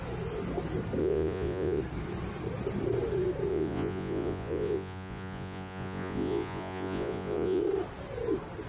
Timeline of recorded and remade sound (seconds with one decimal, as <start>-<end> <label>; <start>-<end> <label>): 0.0-1.0 recorded; 1.0-1.8 remade; 1.8-3.5 recorded; 3.5-7.6 remade; 7.6-8.7 recorded